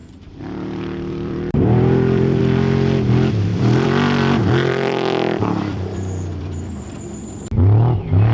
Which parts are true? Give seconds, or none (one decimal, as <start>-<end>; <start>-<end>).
2.4-3.5; 7.2-8.3